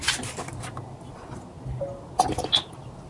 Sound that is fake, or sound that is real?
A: real